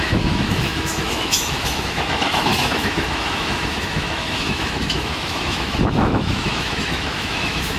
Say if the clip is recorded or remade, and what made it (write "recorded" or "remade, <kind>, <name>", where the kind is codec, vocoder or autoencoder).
remade, autoencoder, DAC-VAE